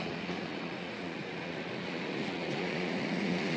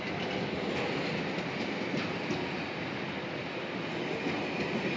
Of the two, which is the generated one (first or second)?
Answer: first